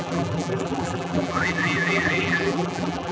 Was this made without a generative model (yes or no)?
no